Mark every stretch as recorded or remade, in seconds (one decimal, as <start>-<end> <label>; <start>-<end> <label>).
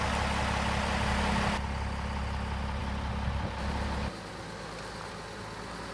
0.0-5.9 recorded